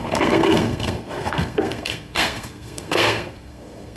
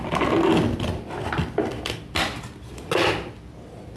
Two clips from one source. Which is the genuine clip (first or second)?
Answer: second